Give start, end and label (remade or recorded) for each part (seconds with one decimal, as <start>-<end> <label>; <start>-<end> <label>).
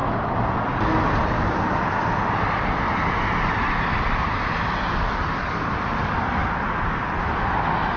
0.0-8.0 recorded